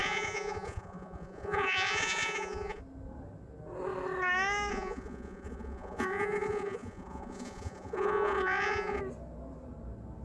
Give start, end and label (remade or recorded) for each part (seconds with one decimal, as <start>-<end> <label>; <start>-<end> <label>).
0.0-2.8 remade; 2.8-4.7 recorded; 4.7-9.0 remade; 9.0-10.2 recorded